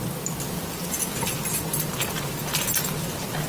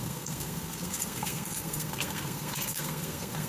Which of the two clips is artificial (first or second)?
second